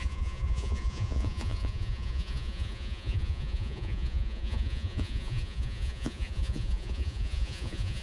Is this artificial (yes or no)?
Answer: yes